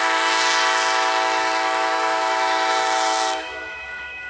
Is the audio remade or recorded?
remade